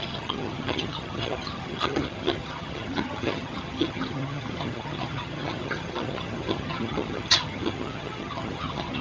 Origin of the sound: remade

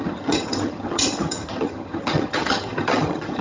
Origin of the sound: remade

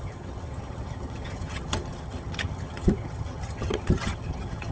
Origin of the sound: remade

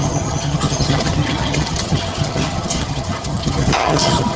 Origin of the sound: remade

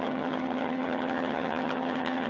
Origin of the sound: remade